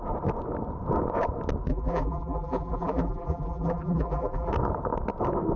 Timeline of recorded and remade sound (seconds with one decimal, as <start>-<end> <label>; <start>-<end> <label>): 0.0-1.7 recorded; 1.7-4.5 remade; 4.5-5.6 recorded